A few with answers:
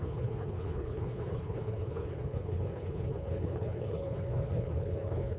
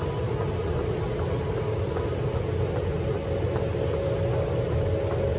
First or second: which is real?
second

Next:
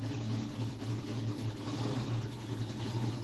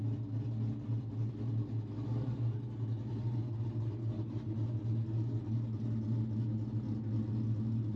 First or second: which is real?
second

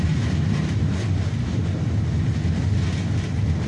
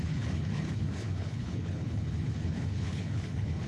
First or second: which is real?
first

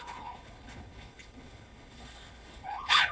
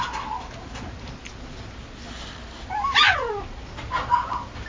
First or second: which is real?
second